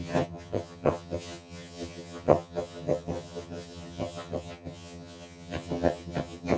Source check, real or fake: fake